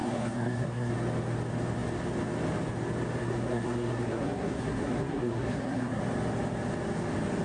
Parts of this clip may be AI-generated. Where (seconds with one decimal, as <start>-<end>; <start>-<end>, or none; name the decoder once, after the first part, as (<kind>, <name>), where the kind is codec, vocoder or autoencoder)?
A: 0.0-0.9 (codec, SNAC); 3.2-6.0